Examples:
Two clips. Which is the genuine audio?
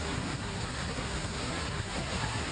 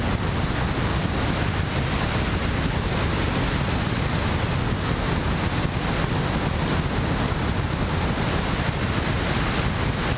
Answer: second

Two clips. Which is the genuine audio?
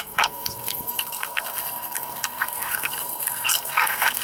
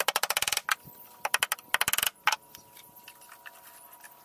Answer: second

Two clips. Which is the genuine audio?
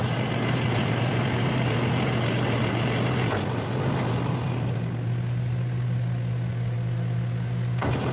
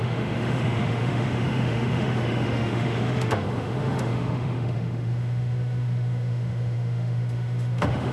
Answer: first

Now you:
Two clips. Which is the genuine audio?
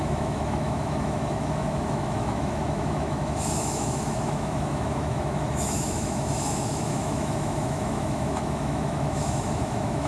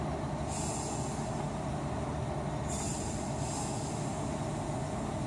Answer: second